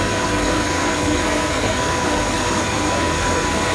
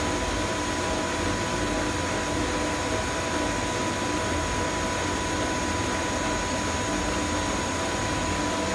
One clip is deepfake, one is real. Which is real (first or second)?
second